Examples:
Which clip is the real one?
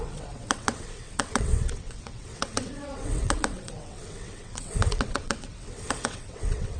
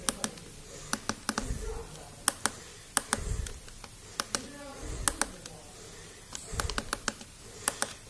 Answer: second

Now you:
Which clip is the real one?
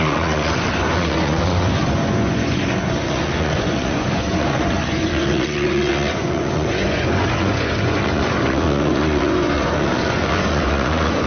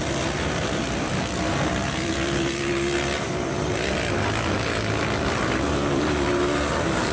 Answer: second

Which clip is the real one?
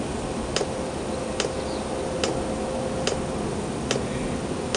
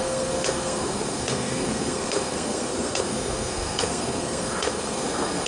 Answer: first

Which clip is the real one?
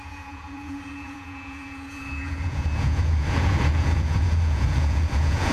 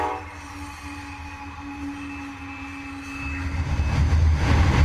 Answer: second